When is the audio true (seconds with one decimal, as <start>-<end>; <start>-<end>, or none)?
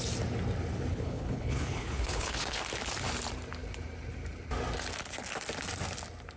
0.0-0.9; 2.6-6.4